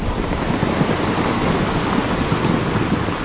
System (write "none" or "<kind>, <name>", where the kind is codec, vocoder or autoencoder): none